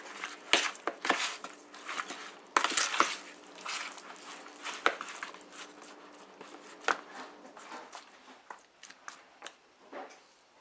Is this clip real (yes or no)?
yes